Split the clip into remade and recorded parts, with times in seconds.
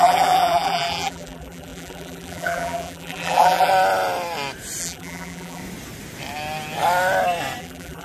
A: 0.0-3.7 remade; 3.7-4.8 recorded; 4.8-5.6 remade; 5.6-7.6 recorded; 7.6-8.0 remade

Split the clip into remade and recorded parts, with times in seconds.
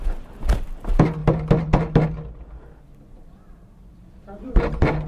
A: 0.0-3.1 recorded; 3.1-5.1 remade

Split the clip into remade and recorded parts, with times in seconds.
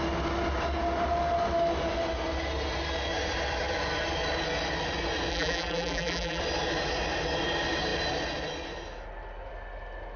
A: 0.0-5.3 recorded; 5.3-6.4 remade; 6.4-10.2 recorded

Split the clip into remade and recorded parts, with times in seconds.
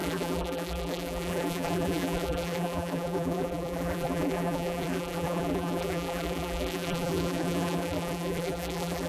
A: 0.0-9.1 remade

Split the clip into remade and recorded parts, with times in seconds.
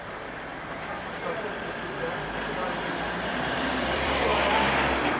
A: 0.0-0.5 remade; 0.5-2.8 recorded; 2.8-4.3 remade; 4.3-5.2 recorded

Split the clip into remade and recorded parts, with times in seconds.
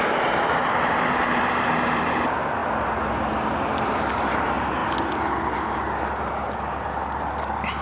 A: 0.0-7.8 recorded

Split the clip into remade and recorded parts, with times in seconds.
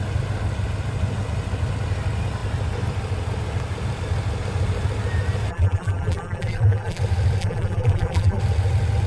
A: 0.0-5.5 recorded; 5.5-7.0 remade; 7.0-7.4 recorded; 7.4-8.4 remade; 8.4-9.1 recorded